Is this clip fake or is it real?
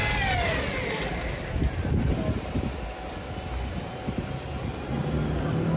real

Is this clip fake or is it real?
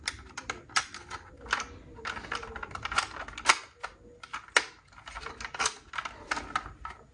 real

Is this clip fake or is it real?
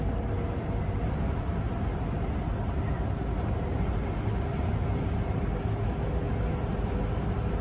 real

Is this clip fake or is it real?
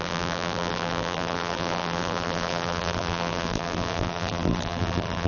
fake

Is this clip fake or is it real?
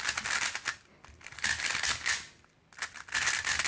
real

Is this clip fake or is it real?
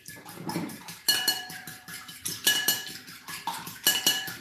fake